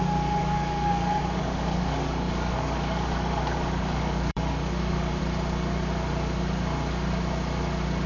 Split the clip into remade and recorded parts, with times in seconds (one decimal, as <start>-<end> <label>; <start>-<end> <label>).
0.0-0.4 recorded; 0.4-5.2 remade; 5.2-8.1 recorded